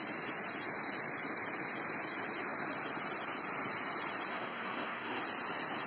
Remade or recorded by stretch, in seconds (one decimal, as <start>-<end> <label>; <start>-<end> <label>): 0.0-4.3 recorded; 4.3-5.2 remade; 5.2-5.9 recorded